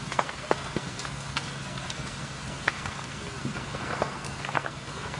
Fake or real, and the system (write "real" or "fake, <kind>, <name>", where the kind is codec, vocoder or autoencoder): fake, codec, SNAC